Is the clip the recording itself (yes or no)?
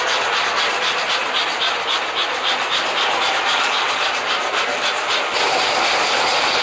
no